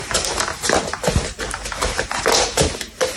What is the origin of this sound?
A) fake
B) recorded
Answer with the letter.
B